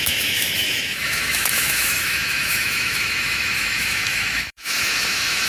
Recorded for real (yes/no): no